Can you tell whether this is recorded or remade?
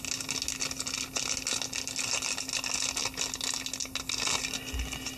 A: recorded